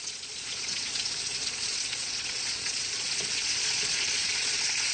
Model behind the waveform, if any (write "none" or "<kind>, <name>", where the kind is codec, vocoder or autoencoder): vocoder, Vocos